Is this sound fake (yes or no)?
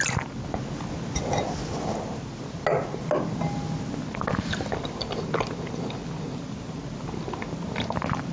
no